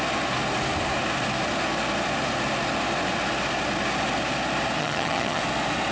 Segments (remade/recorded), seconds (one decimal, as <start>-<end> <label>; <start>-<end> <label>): 0.0-4.8 recorded; 4.8-5.4 remade; 5.4-5.9 recorded